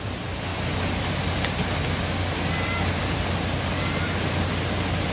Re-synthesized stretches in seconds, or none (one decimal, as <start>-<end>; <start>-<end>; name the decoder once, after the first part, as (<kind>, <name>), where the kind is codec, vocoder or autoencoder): none